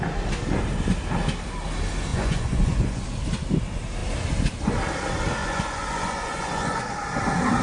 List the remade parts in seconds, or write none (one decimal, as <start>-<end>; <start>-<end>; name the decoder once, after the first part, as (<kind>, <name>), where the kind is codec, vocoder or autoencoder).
2.1-3.0 (vocoder, Vocos); 5.4-6.8